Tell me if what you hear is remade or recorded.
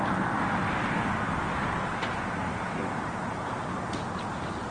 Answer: recorded